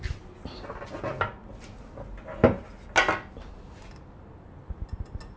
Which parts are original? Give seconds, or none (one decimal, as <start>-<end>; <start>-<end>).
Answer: 0.0-5.4